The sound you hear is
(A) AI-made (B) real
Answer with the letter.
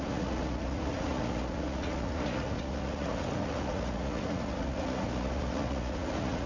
A